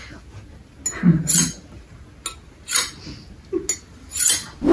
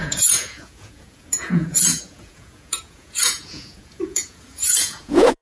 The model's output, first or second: second